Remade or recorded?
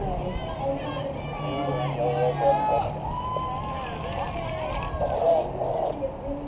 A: recorded